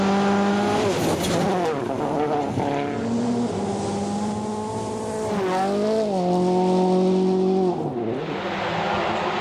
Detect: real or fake real